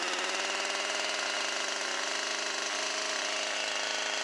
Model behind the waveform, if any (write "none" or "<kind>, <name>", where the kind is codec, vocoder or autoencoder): none